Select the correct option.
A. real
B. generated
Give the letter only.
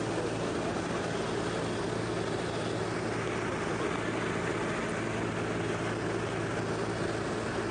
A